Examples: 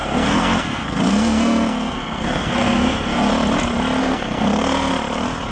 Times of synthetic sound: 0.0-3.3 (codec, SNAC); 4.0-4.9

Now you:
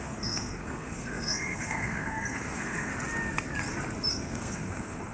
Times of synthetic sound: 0.0-2.9 (codec, SNAC); 4.1-5.1

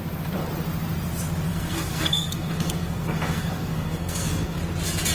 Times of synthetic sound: 1.5-4.6 (codec, SNAC)

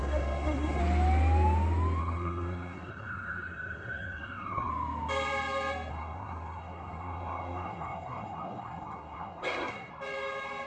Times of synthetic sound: 0.0-0.8 (codec, SNAC); 2.0-4.7; 5.9-9.9

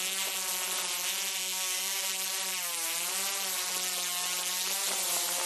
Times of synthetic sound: 1.4-2.1 (codec, SNAC)

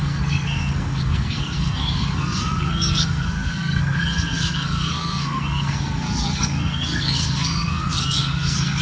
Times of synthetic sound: 0.0-8.8 (codec, SNAC)